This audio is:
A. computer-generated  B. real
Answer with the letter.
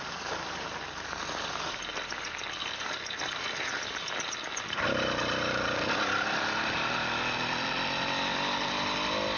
B